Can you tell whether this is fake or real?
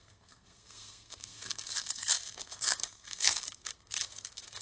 fake